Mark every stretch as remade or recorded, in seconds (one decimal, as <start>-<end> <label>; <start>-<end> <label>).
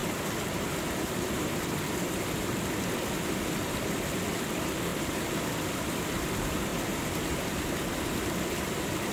0.0-9.1 recorded